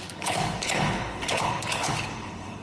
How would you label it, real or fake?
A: fake